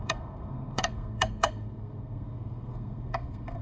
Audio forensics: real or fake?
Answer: fake